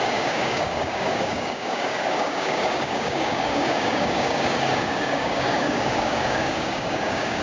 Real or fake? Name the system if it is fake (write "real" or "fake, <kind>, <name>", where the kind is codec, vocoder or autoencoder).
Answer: fake, codec, DAC